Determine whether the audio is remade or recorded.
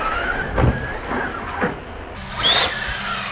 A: recorded